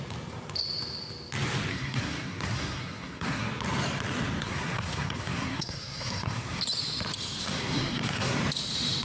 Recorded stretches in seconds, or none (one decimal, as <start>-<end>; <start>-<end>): 0.0-1.7; 3.5-4.4; 6.6-7.4; 8.4-9.0